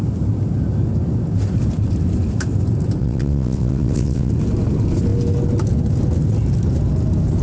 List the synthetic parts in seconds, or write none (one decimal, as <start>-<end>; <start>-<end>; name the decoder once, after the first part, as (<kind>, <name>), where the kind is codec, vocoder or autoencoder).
3.0-4.3 (vocoder, WaveNeXt)